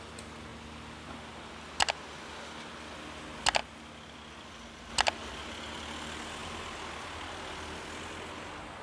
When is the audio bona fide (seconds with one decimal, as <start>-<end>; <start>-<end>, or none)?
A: 0.0-8.8